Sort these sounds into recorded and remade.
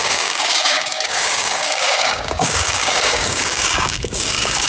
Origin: remade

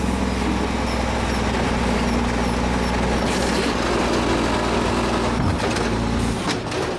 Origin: recorded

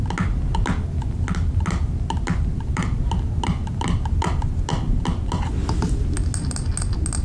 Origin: recorded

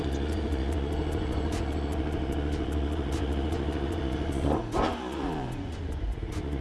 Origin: remade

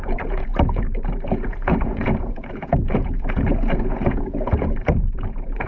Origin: remade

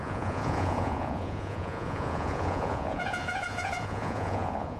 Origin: remade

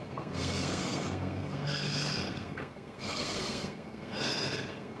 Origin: remade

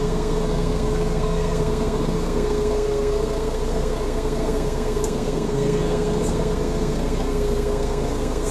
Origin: remade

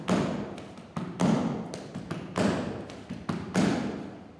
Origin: recorded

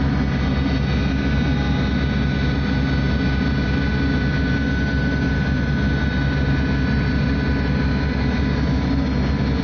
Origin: recorded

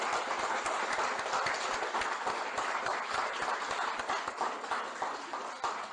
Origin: recorded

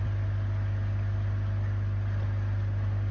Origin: recorded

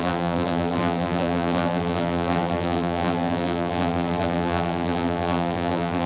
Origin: remade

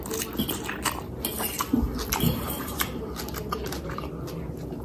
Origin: recorded